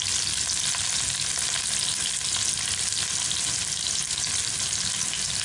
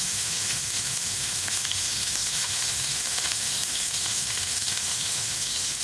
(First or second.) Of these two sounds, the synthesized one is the second